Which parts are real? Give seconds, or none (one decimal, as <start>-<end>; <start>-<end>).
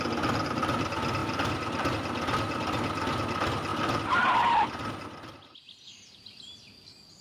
0.0-1.2; 1.9-3.7; 4.9-7.2